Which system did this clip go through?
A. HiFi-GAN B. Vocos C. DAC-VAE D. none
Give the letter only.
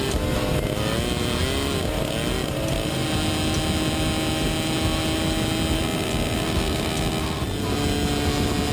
D